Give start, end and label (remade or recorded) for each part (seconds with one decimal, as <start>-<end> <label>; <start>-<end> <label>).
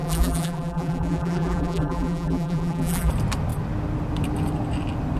0.0-3.1 remade; 3.1-5.2 recorded